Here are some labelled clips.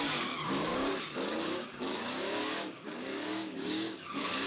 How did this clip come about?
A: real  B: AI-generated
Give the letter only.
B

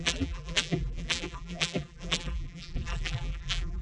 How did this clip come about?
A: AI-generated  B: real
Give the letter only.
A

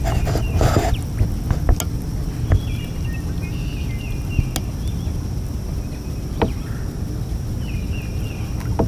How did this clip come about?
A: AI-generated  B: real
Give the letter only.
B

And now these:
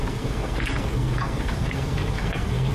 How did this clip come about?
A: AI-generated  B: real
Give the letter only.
A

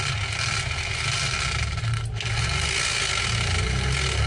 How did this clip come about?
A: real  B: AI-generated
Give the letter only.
A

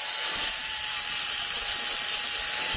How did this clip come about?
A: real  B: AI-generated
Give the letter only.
A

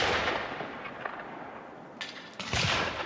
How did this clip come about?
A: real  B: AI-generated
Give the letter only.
A